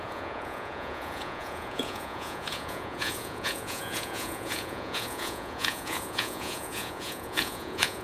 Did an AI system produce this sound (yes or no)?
yes